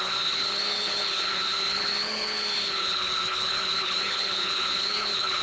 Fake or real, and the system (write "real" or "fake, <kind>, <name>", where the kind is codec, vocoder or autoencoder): fake, codec, HILCodec